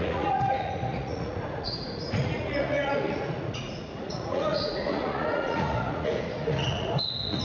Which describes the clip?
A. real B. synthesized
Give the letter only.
B